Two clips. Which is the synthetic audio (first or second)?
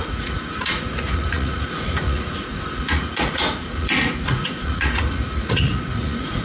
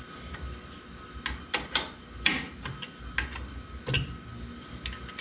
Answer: first